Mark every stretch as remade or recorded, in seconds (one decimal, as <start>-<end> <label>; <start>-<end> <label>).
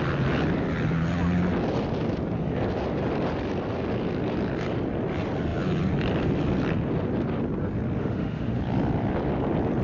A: 0.0-8.0 recorded; 8.0-8.6 remade; 8.6-9.8 recorded